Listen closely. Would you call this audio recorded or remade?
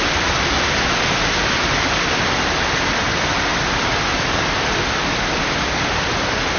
recorded